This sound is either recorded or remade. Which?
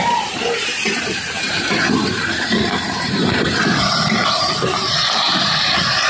remade